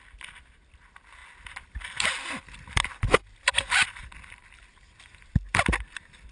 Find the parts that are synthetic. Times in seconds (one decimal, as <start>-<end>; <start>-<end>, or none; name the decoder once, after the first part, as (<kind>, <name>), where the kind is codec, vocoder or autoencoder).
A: none